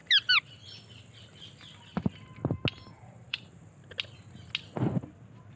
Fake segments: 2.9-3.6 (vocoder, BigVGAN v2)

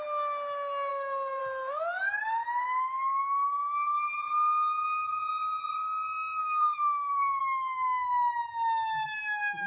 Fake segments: 0.9-1.4 (codec, SNAC); 6.4-7.4

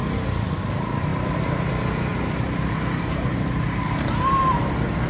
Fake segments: 1.1-1.7 (vocoder, BigVGAN v2); 2.1-4.6